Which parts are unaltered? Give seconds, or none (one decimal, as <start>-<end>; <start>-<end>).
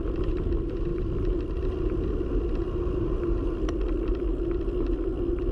0.0-0.9; 4.2-5.5